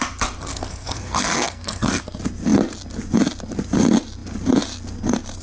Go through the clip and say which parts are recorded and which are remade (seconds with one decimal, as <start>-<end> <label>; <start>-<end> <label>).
0.0-0.5 recorded; 0.5-2.0 remade; 2.0-5.4 recorded